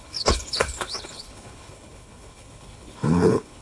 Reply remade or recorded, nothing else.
remade